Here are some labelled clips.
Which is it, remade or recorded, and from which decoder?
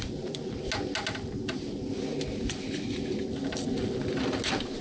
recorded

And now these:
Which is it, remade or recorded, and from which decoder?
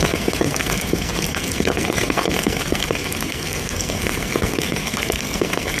remade, codec, SNAC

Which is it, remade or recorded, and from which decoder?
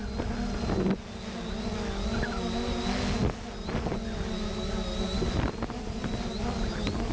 recorded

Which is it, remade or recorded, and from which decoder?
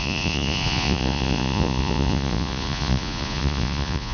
remade, vocoder, Vocos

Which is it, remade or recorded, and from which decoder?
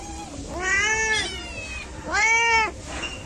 recorded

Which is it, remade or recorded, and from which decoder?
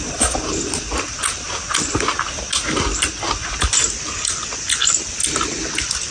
recorded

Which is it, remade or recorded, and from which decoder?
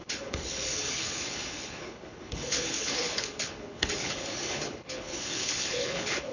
remade, codec, HILCodec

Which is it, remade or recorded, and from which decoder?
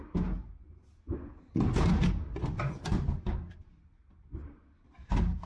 recorded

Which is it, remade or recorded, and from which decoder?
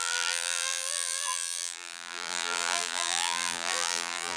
remade, vocoder, BigVGAN v2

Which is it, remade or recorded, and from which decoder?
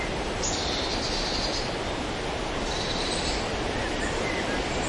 recorded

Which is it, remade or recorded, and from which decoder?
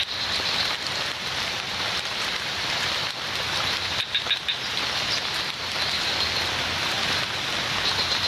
recorded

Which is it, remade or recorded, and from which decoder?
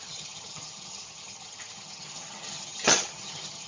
remade, vocoder, HiFi-GAN